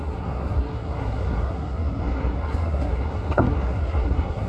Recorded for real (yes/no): no